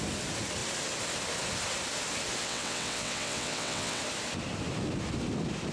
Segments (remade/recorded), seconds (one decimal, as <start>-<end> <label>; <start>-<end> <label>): 0.0-2.4 recorded; 2.4-4.0 remade; 4.0-5.7 recorded